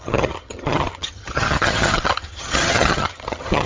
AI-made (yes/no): yes